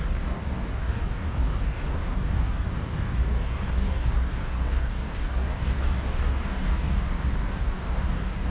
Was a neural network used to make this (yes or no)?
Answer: yes